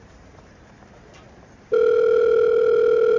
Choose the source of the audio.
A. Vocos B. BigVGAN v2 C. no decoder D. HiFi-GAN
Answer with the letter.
B